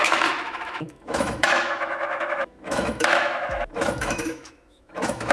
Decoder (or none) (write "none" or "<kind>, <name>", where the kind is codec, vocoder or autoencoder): autoencoder, DAC-VAE